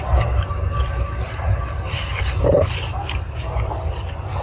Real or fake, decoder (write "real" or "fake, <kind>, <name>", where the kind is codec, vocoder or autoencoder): real